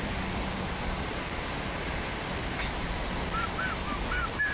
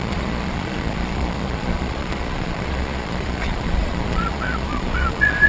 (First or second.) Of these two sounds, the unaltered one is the first